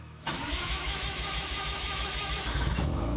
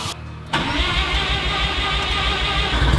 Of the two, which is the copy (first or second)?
first